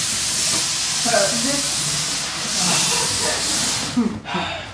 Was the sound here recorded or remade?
recorded